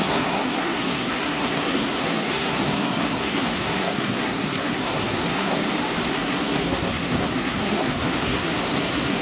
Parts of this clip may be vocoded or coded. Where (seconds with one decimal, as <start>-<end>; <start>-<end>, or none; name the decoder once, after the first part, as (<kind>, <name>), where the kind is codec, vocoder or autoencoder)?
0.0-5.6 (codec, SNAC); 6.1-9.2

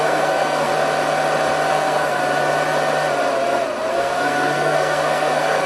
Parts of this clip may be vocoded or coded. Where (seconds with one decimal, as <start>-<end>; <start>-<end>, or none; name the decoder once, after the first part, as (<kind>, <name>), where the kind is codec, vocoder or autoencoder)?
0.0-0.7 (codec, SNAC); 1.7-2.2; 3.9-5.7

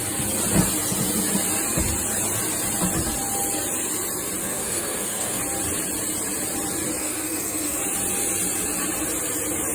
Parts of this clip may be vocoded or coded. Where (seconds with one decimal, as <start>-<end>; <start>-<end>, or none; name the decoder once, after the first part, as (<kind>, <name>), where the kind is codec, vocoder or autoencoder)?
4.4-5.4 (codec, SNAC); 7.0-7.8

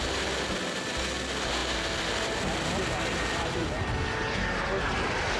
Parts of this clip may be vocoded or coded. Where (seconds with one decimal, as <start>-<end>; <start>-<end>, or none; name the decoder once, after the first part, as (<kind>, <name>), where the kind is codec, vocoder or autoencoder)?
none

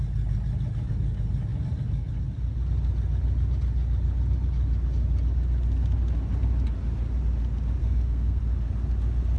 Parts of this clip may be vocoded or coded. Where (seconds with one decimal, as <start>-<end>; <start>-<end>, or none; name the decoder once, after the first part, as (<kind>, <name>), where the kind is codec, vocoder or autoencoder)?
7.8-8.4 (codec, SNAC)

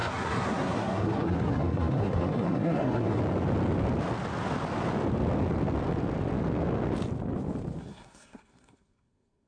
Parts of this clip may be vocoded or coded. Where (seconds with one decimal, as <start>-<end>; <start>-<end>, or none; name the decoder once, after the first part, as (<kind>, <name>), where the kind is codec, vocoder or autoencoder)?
0.0-3.2 (codec, SNAC); 7.8-9.5